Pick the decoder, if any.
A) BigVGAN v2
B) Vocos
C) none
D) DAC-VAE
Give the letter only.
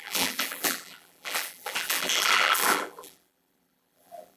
A